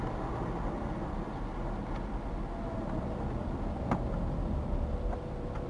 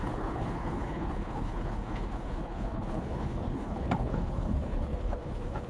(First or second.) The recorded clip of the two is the first